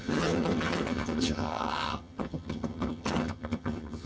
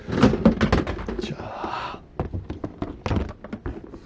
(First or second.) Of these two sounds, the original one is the second